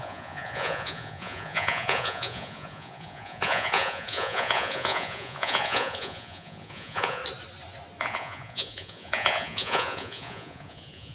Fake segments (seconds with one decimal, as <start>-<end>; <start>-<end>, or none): 0.0-7.2; 8.0-11.1